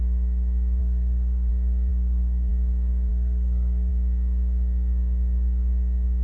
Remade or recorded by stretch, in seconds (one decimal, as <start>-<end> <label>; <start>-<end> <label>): 0.0-0.8 recorded; 0.8-1.5 remade; 1.5-1.9 recorded; 1.9-2.5 remade; 2.5-3.1 recorded; 3.1-3.9 remade; 3.9-6.2 recorded